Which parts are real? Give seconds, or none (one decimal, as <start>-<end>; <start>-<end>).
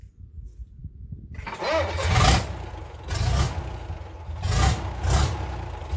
0.0-6.0